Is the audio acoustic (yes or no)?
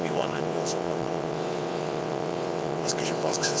no